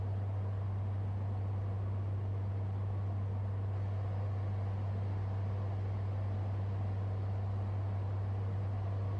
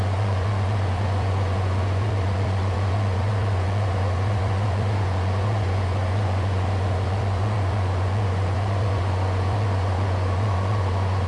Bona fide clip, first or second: first